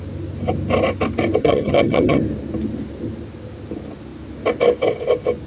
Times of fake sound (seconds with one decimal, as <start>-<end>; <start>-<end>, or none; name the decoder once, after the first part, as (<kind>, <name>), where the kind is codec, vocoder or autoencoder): 1.4-2.2 (vocoder, HiFi-GAN)